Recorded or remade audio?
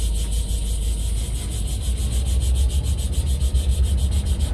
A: recorded